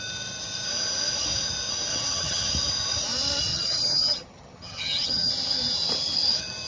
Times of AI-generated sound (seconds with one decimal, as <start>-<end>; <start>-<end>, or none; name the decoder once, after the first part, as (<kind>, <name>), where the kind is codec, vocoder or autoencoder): 1.9-2.5 (vocoder, HiFi-GAN); 3.5-5.3